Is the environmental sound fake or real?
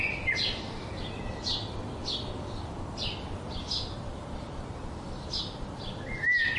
real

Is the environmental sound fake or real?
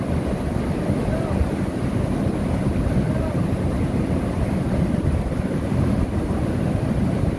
real